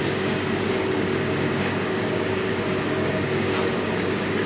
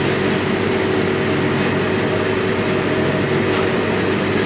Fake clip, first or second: first